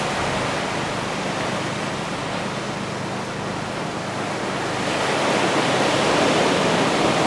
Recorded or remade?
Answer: recorded